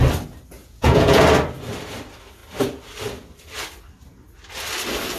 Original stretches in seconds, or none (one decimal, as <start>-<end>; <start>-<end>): 0.0-0.6; 1.2-5.2